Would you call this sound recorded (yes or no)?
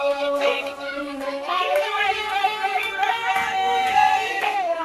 no